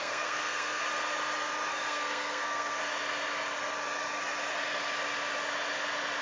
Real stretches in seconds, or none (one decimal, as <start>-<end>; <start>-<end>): 0.8-1.7; 2.8-6.2

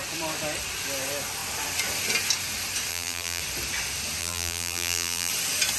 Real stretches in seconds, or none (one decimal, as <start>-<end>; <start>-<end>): 0.0-2.9; 3.4-4.2; 5.3-5.8

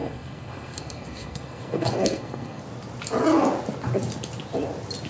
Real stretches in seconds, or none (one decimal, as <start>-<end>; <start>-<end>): 2.6-5.1